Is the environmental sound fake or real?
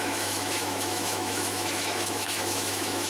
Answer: fake